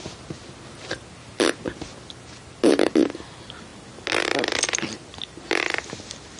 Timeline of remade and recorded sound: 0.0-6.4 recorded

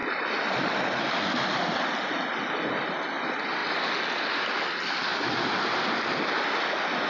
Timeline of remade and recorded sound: 0.0-7.1 recorded

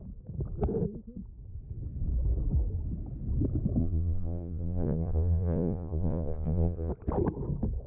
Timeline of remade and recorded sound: 0.0-3.8 recorded; 3.8-6.9 remade; 6.9-7.9 recorded

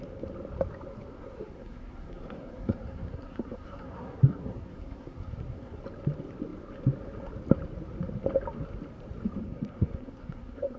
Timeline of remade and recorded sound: 0.0-1.1 recorded; 1.1-5.8 remade; 5.8-9.4 recorded; 9.4-10.8 remade

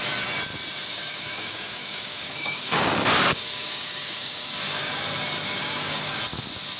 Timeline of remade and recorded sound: 0.0-0.9 recorded; 0.9-5.0 remade; 5.0-5.6 recorded; 5.6-6.2 remade; 6.2-6.8 recorded

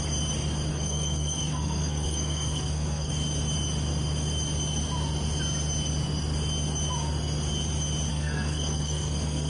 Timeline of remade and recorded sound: 0.0-0.7 recorded; 0.7-3.1 remade; 3.1-8.1 recorded; 8.1-9.5 remade

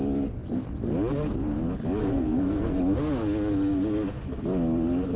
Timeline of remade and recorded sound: 0.0-2.0 recorded; 2.0-2.8 remade; 2.8-5.2 recorded

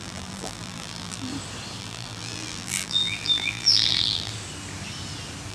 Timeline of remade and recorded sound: 0.0-1.3 remade; 1.3-1.8 recorded; 1.8-4.3 remade; 4.3-5.5 recorded